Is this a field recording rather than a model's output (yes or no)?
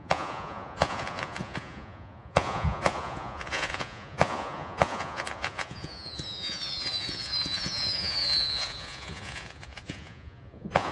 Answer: no